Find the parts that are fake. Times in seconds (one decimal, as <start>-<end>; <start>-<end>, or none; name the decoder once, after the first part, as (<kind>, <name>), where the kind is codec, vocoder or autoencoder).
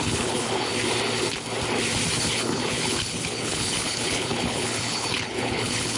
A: 0.0-0.7 (codec, HILCodec); 2.2-6.0